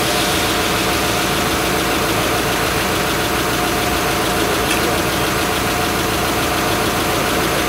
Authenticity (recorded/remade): recorded